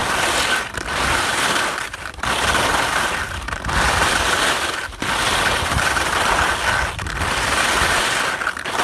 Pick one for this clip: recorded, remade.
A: recorded